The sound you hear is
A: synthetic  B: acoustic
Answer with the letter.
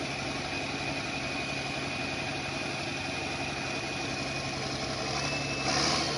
B